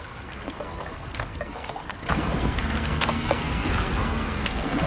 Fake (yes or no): yes